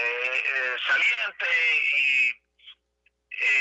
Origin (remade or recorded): recorded